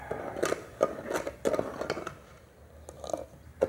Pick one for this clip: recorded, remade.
recorded